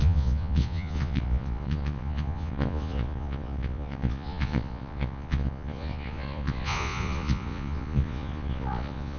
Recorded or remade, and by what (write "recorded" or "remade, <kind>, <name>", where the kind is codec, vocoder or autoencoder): remade, vocoder, Vocos